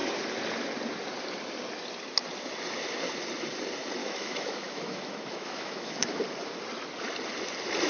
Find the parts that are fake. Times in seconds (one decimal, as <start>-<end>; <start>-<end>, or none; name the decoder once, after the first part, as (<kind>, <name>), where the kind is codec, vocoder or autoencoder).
4.0-6.2 (autoencoder, DAC-VAE)